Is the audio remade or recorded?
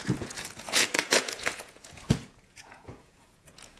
remade